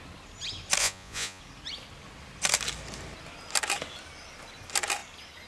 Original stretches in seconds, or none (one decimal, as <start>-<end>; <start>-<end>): 0.0-0.8; 1.4-5.5